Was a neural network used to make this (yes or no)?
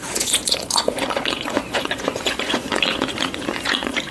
yes